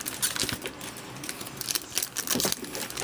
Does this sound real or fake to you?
real